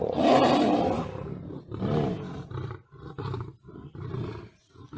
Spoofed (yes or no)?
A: no